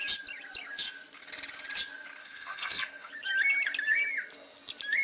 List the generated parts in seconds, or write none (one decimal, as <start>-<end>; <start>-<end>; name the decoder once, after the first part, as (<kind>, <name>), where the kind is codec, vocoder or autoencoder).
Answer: 2.2-3.1 (codec, SNAC)